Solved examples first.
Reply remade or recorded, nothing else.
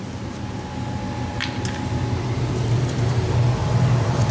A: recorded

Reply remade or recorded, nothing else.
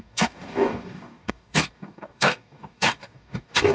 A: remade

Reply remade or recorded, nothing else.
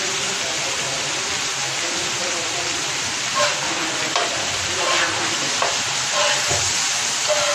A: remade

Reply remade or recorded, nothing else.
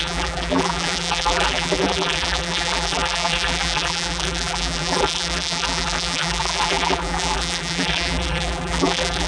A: remade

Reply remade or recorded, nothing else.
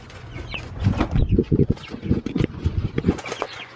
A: remade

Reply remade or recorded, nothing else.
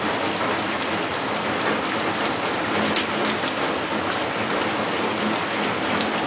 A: recorded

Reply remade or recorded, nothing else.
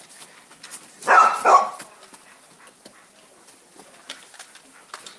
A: recorded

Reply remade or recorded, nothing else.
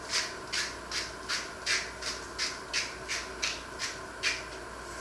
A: recorded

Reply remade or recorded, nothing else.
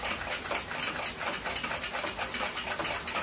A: recorded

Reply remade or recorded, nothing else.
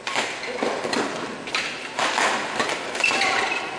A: recorded